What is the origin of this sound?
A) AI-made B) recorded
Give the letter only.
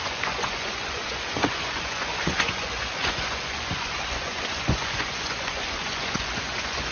A